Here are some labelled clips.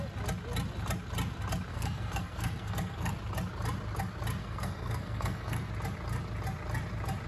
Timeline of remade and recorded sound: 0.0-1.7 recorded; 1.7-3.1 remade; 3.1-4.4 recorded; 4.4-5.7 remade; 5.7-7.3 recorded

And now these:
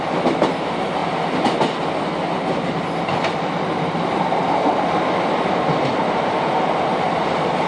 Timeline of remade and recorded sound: 0.0-7.7 recorded

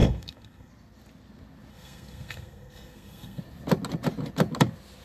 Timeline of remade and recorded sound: 0.0-0.7 remade; 0.7-1.7 recorded; 1.7-3.4 remade; 3.4-5.0 recorded

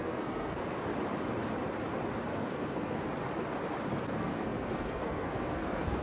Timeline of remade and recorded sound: 0.0-0.6 remade; 0.6-2.3 recorded; 2.3-3.0 remade; 3.0-4.1 recorded; 4.1-6.0 remade

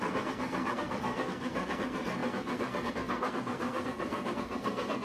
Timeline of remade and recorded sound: 0.0-5.0 remade

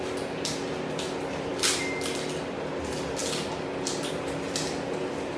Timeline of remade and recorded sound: 0.0-5.4 recorded

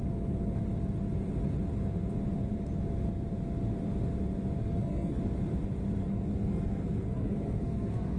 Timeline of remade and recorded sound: 0.0-4.6 recorded; 4.6-5.2 remade; 5.2-6.0 recorded; 6.0-8.2 remade